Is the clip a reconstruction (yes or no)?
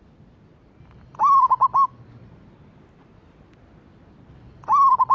no